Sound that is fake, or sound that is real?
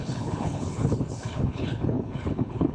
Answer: fake